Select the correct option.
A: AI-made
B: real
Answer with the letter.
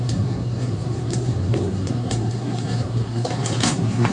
A